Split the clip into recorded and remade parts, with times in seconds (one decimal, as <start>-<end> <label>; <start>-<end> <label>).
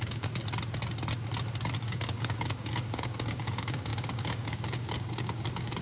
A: 0.0-0.4 remade; 0.4-1.8 recorded; 1.8-5.8 remade